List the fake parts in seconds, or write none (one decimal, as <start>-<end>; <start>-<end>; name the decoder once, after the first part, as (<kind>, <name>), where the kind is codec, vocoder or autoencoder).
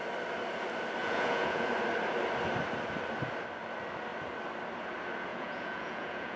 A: 1.0-1.7 (vocoder, Vocos); 5.3-6.4